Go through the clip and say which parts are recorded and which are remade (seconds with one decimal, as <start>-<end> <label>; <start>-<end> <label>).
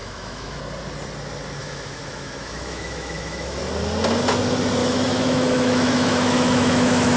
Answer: 0.0-0.6 remade; 0.6-1.6 recorded; 1.6-3.6 remade; 3.6-4.8 recorded; 4.8-7.2 remade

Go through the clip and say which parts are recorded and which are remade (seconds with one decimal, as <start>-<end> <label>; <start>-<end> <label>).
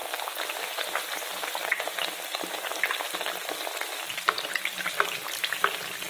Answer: 0.0-6.1 recorded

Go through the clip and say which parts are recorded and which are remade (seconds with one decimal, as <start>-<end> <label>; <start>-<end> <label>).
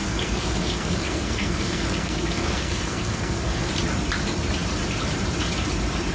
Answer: 0.0-3.7 remade; 3.7-6.1 recorded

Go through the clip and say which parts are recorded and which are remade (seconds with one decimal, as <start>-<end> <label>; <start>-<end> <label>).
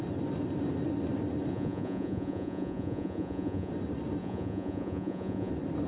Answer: 0.0-1.5 recorded; 1.5-3.7 remade; 3.7-4.2 recorded; 4.2-5.5 remade; 5.5-5.9 recorded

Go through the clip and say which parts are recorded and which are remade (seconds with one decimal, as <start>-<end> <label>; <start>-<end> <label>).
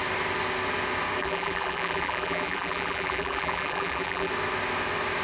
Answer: 0.0-1.2 recorded; 1.2-4.3 remade; 4.3-5.2 recorded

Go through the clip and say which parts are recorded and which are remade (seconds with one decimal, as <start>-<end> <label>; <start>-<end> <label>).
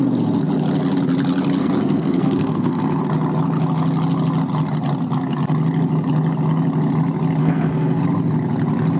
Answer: 0.0-1.6 recorded; 1.6-3.0 remade; 3.0-7.4 recorded; 7.4-8.0 remade; 8.0-9.0 recorded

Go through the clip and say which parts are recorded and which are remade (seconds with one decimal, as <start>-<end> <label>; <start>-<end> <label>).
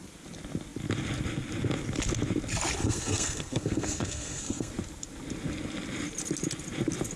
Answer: 0.0-2.8 recorded; 2.8-4.7 remade; 4.7-7.2 recorded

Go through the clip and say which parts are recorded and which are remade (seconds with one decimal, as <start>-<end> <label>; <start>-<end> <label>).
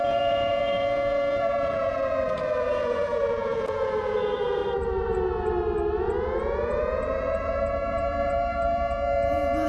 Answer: 0.0-4.6 remade; 4.6-6.4 recorded; 6.4-9.7 remade